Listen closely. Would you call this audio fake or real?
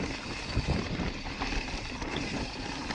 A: real